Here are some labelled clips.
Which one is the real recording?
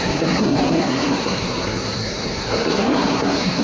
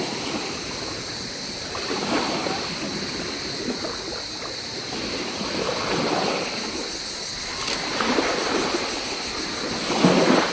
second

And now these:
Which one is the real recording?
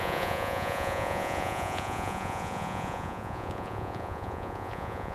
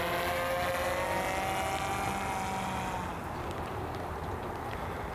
second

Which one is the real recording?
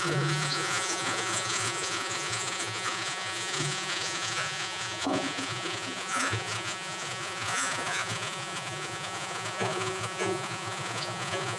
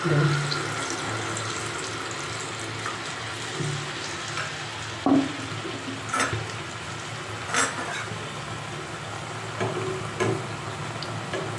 second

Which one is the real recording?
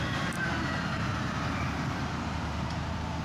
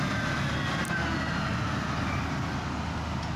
second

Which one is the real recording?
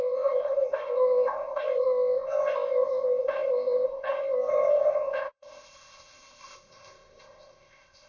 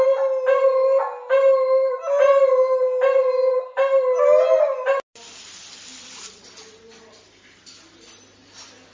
second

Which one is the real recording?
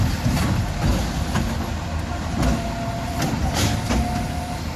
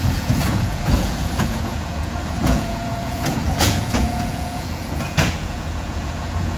first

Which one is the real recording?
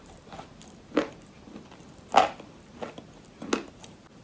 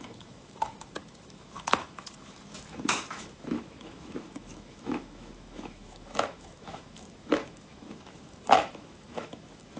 first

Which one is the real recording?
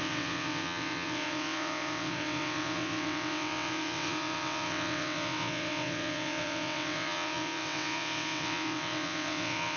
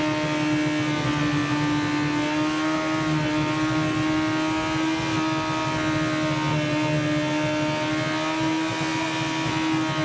second